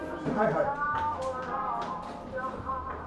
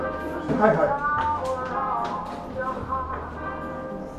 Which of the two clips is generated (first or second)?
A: first